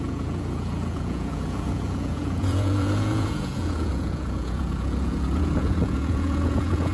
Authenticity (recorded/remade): remade